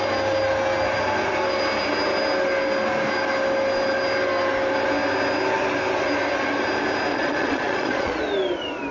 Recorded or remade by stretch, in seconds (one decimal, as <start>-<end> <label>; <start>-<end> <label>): 0.0-7.1 recorded; 7.1-8.2 remade; 8.2-8.9 recorded